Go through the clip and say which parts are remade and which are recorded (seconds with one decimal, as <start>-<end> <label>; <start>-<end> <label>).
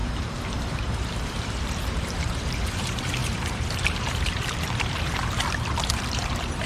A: 0.0-5.2 remade; 5.2-5.8 recorded; 5.8-6.7 remade